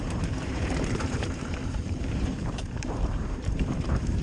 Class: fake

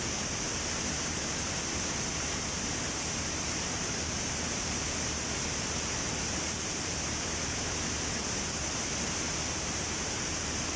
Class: fake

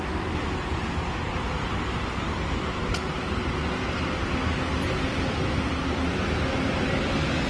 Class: real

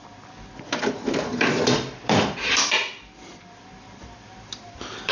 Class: fake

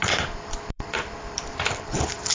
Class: fake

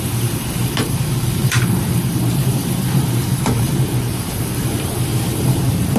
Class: fake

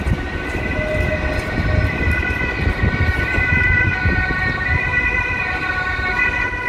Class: real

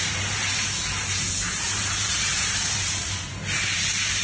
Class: fake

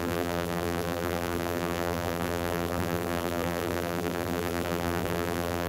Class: fake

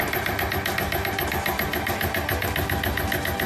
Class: real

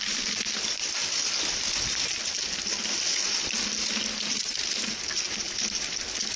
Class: real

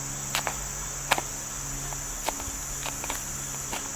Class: real